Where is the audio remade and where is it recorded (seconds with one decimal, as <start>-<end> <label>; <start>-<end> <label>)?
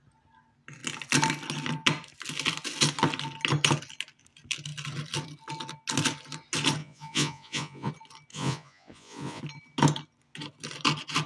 0.0-6.8 recorded; 6.8-7.9 remade; 7.9-8.3 recorded; 8.3-9.4 remade; 9.4-11.3 recorded